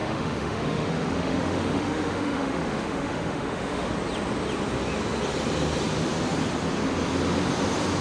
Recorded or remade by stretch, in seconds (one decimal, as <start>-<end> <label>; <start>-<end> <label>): 0.0-3.9 remade; 3.9-8.0 recorded

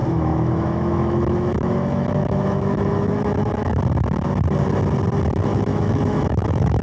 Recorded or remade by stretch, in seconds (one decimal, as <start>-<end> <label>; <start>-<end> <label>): 0.0-3.8 remade; 3.8-5.5 recorded; 5.5-6.8 remade